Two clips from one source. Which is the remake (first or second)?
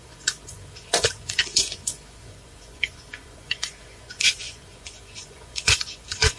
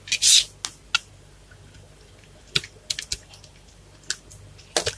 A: first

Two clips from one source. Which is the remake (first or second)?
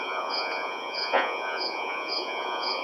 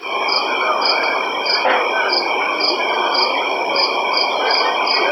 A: first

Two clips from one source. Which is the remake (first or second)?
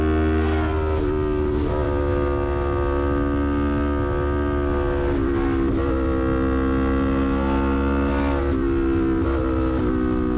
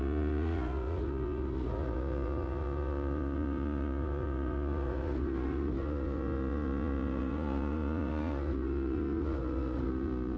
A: second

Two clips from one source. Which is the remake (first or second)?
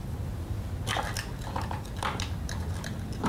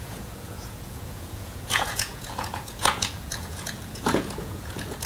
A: second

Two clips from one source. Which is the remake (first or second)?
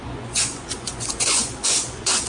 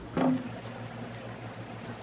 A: first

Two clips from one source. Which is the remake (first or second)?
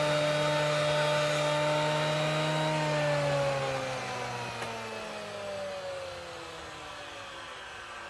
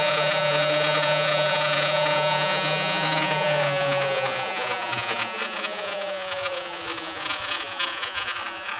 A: second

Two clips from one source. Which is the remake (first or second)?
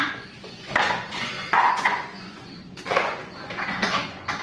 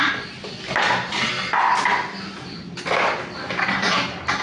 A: first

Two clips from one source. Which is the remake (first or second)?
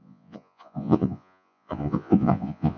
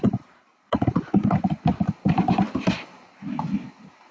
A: first